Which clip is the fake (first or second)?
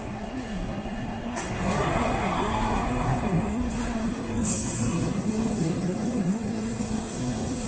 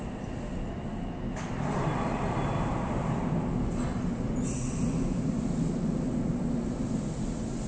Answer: first